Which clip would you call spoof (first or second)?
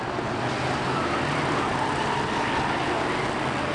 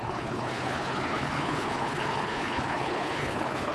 second